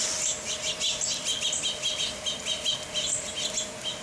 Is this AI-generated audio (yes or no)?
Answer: no